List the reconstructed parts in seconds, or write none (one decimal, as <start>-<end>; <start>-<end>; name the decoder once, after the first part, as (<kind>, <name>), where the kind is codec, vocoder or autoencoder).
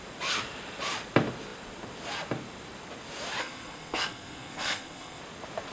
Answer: 3.4-5.2 (codec, SNAC)